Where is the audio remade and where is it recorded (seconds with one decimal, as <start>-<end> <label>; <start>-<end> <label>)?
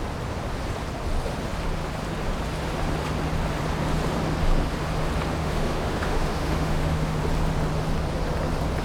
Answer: 0.0-5.4 recorded; 5.4-7.2 remade; 7.2-8.8 recorded